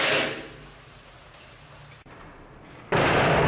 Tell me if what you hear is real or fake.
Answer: real